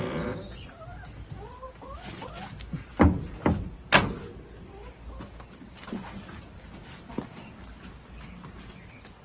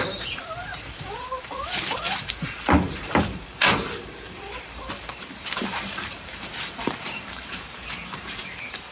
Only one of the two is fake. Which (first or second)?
second